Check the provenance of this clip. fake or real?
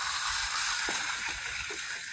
real